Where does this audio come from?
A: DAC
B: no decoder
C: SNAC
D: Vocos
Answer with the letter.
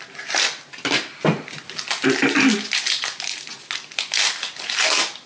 B